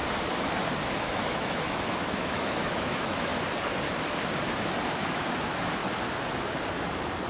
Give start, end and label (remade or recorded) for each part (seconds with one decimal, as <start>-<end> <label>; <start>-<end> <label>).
0.0-1.0 recorded; 1.0-3.3 remade; 3.3-4.9 recorded; 4.9-5.8 remade; 5.8-7.3 recorded